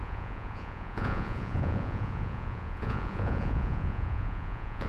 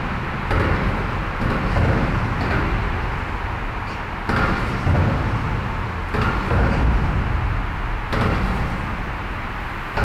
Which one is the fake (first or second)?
first